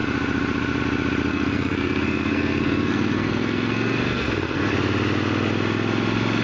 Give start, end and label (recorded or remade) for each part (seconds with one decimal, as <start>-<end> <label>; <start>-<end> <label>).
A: 0.0-1.3 recorded; 1.3-4.7 remade; 4.7-6.4 recorded